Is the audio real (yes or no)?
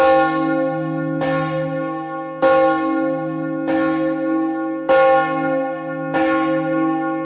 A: yes